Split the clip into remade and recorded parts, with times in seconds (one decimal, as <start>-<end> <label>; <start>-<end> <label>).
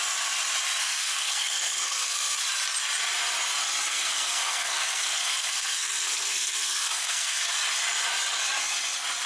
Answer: 0.0-0.8 recorded; 0.8-2.4 remade; 2.4-3.9 recorded; 3.9-7.5 remade; 7.5-9.3 recorded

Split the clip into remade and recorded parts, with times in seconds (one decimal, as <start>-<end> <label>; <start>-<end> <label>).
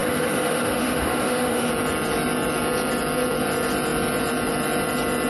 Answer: 0.0-1.7 remade; 1.7-5.3 recorded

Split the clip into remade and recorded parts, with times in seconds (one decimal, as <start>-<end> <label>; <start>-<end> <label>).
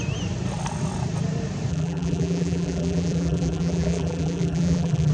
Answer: 0.0-1.7 recorded; 1.7-5.1 remade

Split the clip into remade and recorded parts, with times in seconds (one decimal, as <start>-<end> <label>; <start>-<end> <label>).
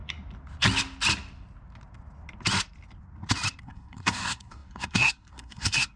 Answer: 0.0-3.6 recorded; 3.6-6.0 remade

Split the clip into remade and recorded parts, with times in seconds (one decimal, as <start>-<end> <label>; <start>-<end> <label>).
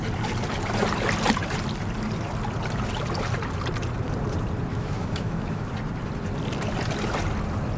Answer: 0.0-4.7 recorded; 4.7-5.7 remade; 5.7-7.8 recorded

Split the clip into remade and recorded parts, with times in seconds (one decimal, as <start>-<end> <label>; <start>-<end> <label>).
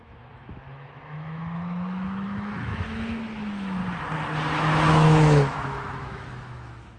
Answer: 0.0-3.8 remade; 3.8-4.9 recorded; 4.9-7.0 remade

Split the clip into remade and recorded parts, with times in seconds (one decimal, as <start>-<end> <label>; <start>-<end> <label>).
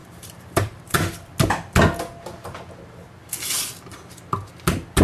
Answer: 0.0-0.8 remade; 0.8-5.0 recorded